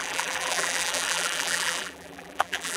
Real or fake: fake